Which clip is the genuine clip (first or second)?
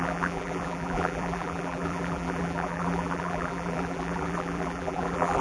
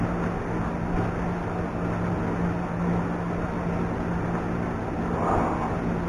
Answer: second